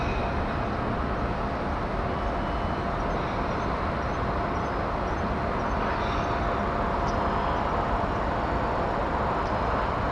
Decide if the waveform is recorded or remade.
recorded